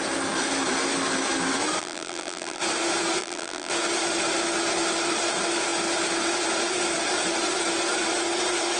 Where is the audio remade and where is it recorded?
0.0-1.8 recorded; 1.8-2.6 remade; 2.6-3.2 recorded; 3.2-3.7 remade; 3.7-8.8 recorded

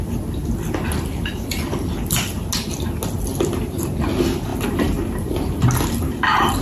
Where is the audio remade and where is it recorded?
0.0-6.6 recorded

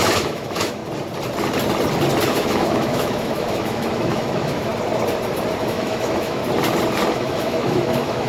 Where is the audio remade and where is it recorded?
0.0-0.8 remade; 0.8-2.3 recorded; 2.3-4.7 remade; 4.7-5.6 recorded; 5.6-6.4 remade; 6.4-7.1 recorded; 7.1-8.3 remade

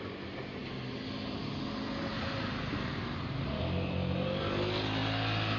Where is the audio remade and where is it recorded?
0.0-2.1 recorded; 2.1-3.6 remade; 3.6-5.0 recorded; 5.0-5.6 remade

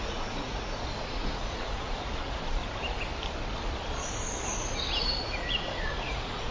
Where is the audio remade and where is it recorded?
0.0-2.6 remade; 2.6-5.0 recorded; 5.0-6.5 remade